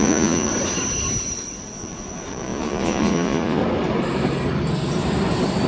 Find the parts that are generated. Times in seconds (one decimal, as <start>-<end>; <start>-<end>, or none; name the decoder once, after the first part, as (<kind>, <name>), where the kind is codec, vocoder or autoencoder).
0.0-0.5 (vocoder, Vocos); 1.7-3.6